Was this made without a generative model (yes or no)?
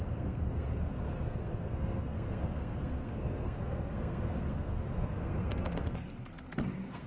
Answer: no